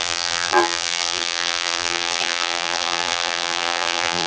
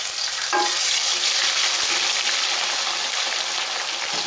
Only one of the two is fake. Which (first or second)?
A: first